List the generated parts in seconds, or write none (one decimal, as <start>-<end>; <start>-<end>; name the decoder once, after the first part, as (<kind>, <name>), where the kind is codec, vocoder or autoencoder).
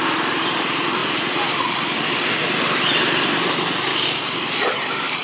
3.9-4.5 (codec, DAC)